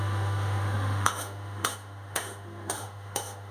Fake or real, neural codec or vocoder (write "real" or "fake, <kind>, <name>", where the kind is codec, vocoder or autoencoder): fake, autoencoder, DAC-VAE